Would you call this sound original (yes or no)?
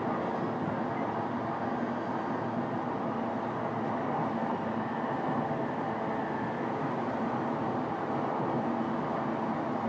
yes